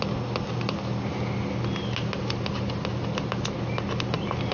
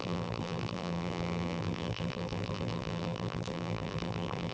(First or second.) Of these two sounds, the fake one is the second